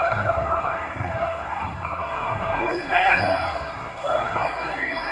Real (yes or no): no